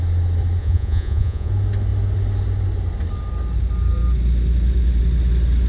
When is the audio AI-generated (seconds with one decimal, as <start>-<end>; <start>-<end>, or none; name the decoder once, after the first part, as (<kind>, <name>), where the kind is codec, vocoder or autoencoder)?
0.6-1.5 (vocoder, Vocos)